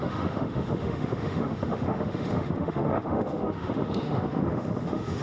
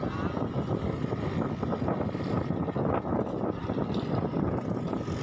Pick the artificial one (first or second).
first